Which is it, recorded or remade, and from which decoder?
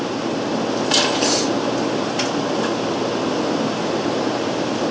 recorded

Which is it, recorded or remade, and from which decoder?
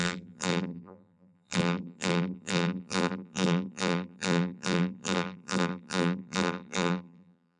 remade, vocoder, BigVGAN v2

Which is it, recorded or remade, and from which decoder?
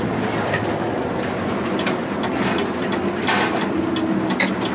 recorded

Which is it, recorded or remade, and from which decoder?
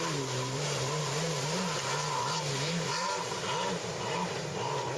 remade, vocoder, BigVGAN v2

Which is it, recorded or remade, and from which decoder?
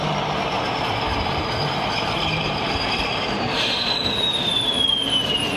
remade, vocoder, BigVGAN v2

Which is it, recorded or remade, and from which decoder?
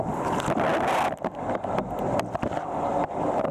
recorded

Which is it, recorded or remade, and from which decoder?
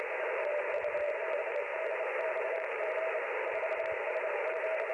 remade, vocoder, BigVGAN v2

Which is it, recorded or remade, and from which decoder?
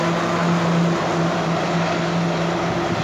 recorded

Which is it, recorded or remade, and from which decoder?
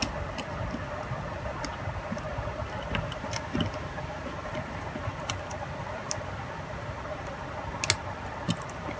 recorded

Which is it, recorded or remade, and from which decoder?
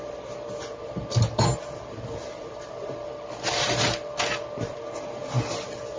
recorded